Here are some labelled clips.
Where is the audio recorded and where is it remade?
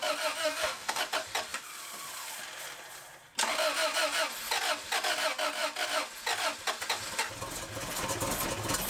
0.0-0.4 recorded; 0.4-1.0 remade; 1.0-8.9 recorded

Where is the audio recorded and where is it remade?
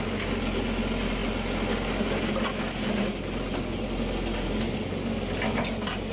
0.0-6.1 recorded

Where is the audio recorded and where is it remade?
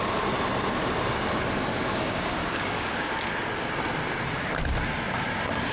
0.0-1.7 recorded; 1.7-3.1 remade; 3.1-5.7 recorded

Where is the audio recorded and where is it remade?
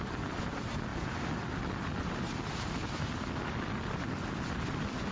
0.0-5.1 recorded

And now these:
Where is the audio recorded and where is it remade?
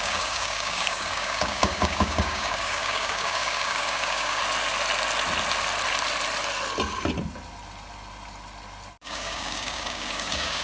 0.0-4.4 remade; 4.4-9.0 recorded; 9.0-10.6 remade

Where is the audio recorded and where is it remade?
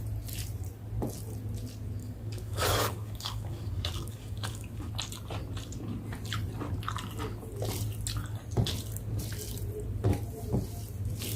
0.0-2.0 recorded; 2.0-4.9 remade; 4.9-11.4 recorded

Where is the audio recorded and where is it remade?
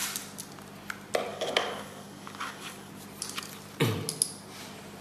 0.0-1.3 recorded; 1.3-2.9 remade; 2.9-5.0 recorded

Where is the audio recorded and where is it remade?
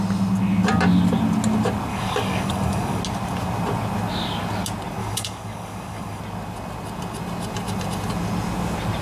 0.0-1.9 recorded; 1.9-3.0 remade; 3.0-5.0 recorded; 5.0-6.2 remade; 6.2-9.0 recorded